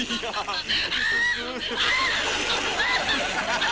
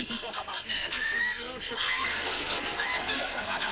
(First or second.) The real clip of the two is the first